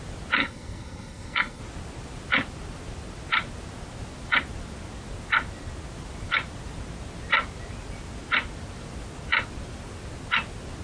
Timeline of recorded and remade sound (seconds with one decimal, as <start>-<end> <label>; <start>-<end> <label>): 0.0-0.4 recorded; 0.4-1.6 remade; 1.6-10.8 recorded